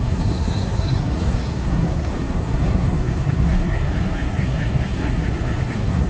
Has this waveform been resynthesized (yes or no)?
yes